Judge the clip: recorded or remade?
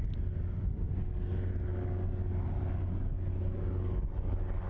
recorded